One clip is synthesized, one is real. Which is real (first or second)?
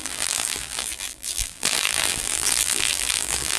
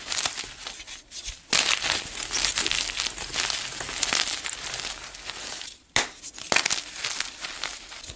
second